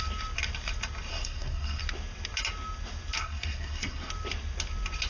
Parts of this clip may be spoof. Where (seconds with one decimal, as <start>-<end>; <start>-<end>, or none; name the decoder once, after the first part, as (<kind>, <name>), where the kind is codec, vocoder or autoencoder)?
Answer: 1.1-1.8 (codec, SNAC); 3.2-4.1